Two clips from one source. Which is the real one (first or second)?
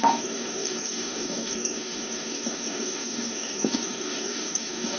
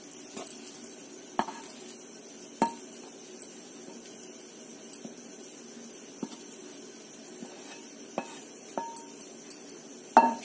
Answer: second